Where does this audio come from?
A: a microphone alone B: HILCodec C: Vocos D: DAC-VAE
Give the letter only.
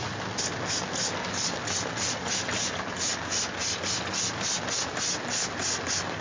A